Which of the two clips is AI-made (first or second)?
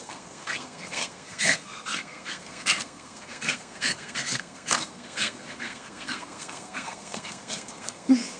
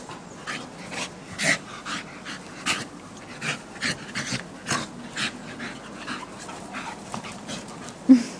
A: first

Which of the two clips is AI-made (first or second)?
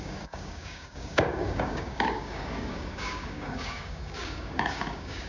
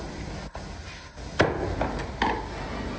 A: first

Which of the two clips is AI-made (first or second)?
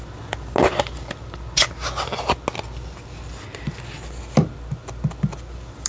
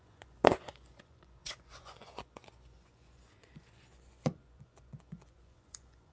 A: second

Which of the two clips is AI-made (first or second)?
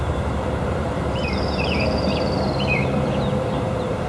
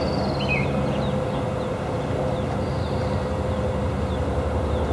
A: first